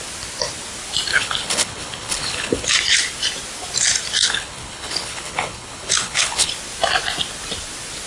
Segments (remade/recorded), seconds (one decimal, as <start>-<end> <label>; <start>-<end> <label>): 0.0-1.1 recorded; 1.1-2.7 remade; 2.7-4.2 recorded; 4.2-6.5 remade; 6.5-8.1 recorded